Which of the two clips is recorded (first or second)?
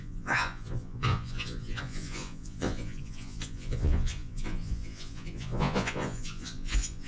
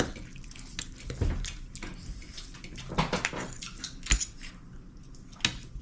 second